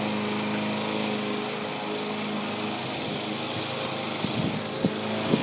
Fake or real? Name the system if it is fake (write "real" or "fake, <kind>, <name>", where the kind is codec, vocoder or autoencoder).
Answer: real